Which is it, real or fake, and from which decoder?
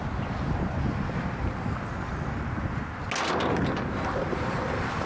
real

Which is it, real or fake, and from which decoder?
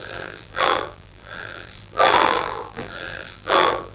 fake, vocoder, BigVGAN v2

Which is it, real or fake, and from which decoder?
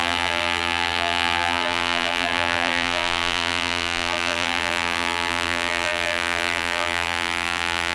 fake, vocoder, BigVGAN v2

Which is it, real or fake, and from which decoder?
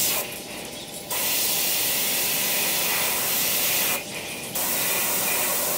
real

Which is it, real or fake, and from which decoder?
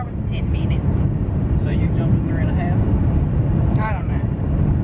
fake, vocoder, BigVGAN v2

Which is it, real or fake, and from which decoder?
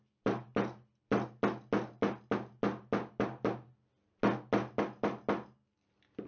real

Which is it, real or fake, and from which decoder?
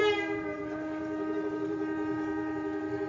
fake, vocoder, BigVGAN v2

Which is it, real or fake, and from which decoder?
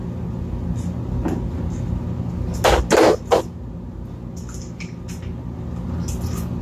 real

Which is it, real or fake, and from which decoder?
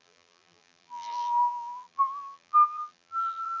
fake, vocoder, BigVGAN v2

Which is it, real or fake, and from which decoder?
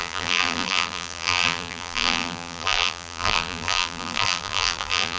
fake, vocoder, BigVGAN v2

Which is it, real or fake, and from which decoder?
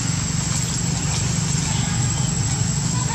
real